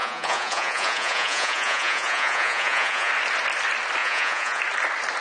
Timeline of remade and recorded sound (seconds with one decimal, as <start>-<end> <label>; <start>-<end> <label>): 0.0-3.1 remade; 3.1-4.0 recorded; 4.0-4.6 remade; 4.6-5.2 recorded